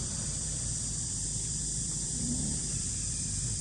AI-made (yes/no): yes